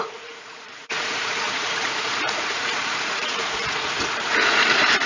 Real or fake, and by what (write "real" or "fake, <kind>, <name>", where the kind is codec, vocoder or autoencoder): fake, vocoder, Vocos